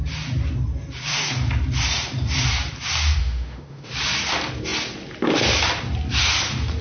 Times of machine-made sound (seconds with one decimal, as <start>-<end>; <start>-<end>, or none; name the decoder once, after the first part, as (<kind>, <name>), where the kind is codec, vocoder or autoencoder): 3.2-3.9 (autoencoder, DAC-VAE)